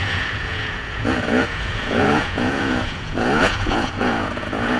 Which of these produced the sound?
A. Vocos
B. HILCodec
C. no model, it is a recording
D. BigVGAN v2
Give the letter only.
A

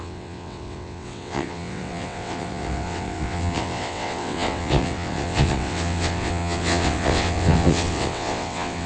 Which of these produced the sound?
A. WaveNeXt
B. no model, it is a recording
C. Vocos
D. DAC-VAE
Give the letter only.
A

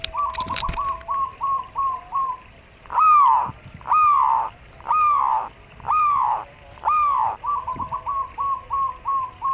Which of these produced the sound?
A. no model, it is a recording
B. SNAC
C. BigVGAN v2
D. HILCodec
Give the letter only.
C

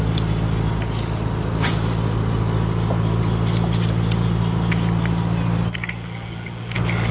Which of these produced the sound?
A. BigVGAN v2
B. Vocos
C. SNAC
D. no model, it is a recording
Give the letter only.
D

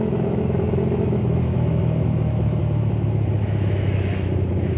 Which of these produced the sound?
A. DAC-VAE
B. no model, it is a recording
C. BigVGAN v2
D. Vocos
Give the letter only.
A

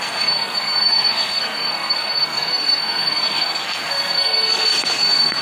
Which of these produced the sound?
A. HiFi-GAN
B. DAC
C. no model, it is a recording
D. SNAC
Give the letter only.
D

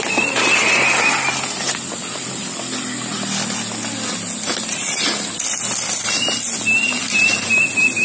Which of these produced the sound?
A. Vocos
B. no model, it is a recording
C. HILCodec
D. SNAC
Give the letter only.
B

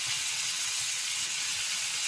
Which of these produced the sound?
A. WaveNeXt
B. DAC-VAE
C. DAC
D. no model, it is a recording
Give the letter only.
A